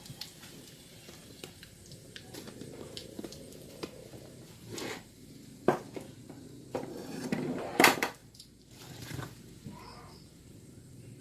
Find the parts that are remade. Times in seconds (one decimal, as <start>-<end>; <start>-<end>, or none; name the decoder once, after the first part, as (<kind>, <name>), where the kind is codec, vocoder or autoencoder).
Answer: 0.0-11.2 (vocoder, BigVGAN v2)